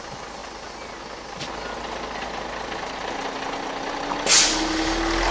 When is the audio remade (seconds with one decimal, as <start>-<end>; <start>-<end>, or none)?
none